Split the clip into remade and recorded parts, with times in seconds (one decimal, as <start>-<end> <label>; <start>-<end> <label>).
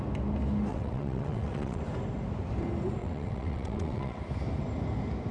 0.0-0.7 recorded; 0.7-1.8 remade; 1.8-3.0 recorded; 3.0-4.2 remade; 4.2-5.3 recorded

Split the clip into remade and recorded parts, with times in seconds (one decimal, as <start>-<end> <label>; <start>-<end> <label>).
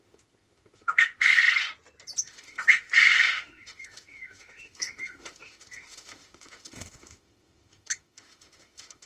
0.0-1.4 remade; 1.4-2.2 recorded; 2.2-9.1 remade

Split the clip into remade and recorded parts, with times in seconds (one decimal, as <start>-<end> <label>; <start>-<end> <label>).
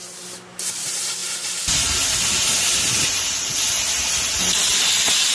0.0-5.3 recorded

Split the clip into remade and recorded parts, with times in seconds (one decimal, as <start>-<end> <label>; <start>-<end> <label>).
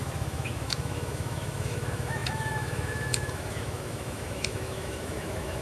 0.0-5.6 remade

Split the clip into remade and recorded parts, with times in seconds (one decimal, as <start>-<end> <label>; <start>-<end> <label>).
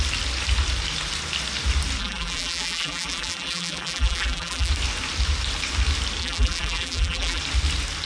0.0-2.0 recorded; 2.0-4.7 remade; 4.7-6.2 recorded; 6.2-7.4 remade; 7.4-8.1 recorded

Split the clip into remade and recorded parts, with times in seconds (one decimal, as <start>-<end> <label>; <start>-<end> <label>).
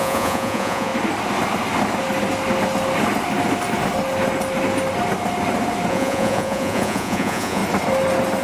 0.0-0.9 remade; 0.9-5.9 recorded; 5.9-7.6 remade; 7.6-8.4 recorded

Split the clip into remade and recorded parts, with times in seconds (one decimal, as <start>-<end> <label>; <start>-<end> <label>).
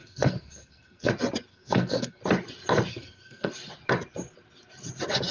0.0-1.1 remade; 1.1-1.5 recorded; 1.5-2.2 remade; 2.2-2.9 recorded; 2.9-3.5 remade; 3.5-5.3 recorded